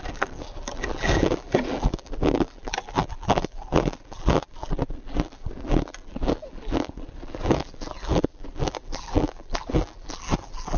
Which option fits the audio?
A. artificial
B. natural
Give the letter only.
A